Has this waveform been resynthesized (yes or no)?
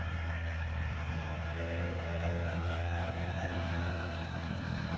yes